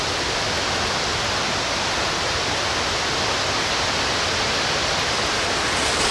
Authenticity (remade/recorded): recorded